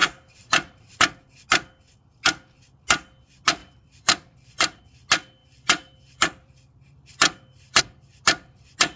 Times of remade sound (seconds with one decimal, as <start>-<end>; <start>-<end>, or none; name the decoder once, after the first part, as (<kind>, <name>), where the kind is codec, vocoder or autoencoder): 0.0-1.0 (vocoder, BigVGAN v2); 3.6-4.8; 5.4-7.8